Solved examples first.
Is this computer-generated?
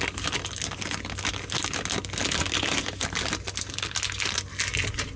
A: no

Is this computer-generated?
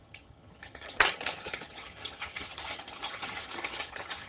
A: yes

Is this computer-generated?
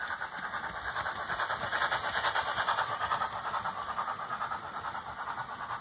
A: no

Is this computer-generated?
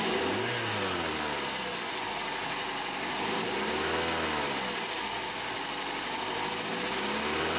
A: no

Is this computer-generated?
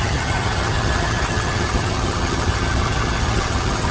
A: yes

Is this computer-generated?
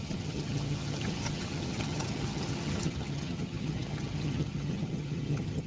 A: yes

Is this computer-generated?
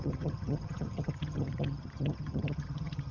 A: yes